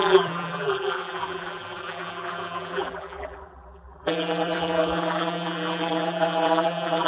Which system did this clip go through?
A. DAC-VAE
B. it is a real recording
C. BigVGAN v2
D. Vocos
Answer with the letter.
C